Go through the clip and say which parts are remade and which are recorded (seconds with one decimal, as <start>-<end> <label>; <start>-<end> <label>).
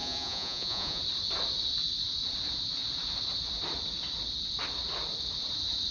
0.0-1.0 remade; 1.0-5.9 recorded